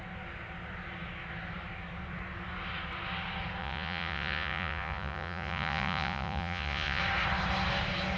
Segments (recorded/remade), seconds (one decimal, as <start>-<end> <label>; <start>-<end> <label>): 0.0-3.6 recorded; 3.6-7.0 remade; 7.0-8.2 recorded